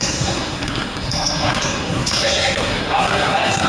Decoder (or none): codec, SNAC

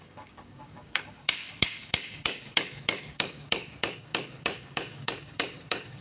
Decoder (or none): codec, DAC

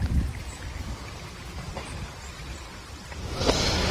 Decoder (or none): none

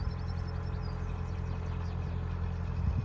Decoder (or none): none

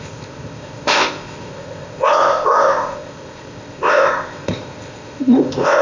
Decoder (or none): codec, ZipCodec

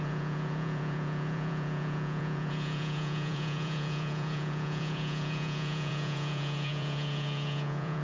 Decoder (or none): vocoder, Vocos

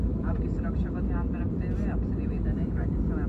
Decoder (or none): vocoder, BigVGAN v2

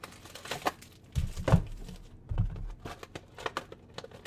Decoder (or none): none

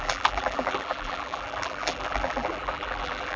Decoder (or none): vocoder, BigVGAN v2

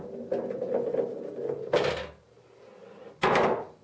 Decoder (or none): none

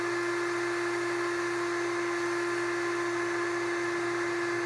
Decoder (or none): none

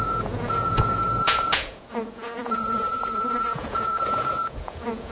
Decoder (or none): vocoder, Vocos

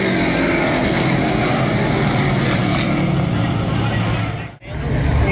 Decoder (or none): none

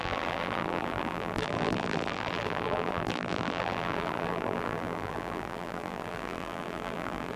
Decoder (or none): vocoder, BigVGAN v2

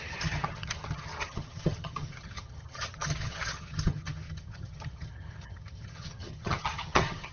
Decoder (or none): vocoder, HiFi-GAN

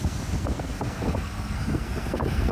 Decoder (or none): codec, SNAC